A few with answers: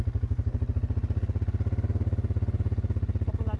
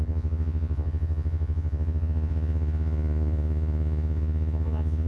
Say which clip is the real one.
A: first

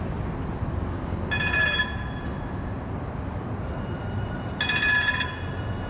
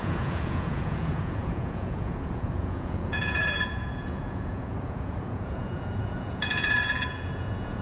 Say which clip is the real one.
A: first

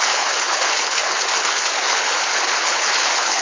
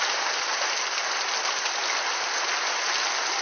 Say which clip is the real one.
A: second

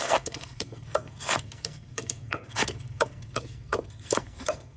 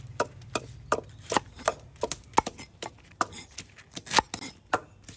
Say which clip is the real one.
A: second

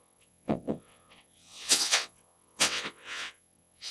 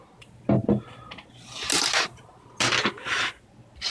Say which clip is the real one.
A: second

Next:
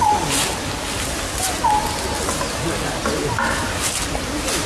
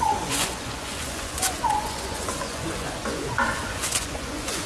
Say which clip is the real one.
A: first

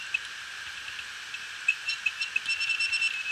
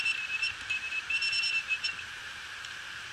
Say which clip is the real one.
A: first